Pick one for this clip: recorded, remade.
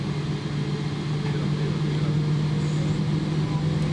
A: recorded